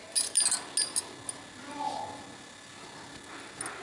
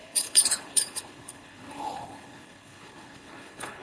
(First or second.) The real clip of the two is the first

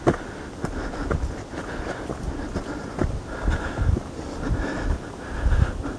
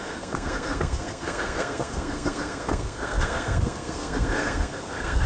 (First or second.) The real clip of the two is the first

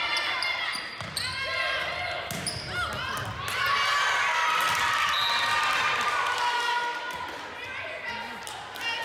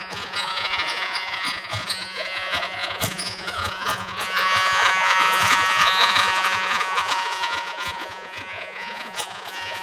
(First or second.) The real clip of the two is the first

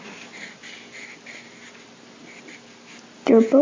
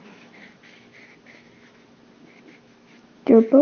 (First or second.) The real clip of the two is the first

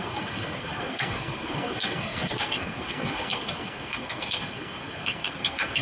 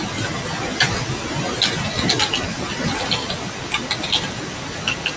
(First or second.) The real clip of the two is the second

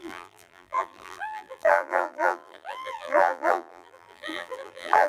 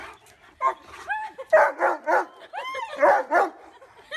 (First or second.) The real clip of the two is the second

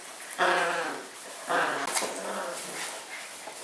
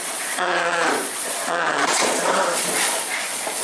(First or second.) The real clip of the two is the first